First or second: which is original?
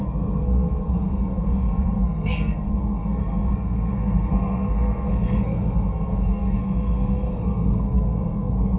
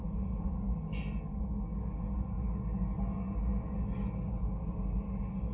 second